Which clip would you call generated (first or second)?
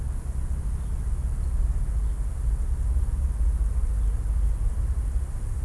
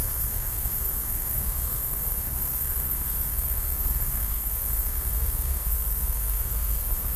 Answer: second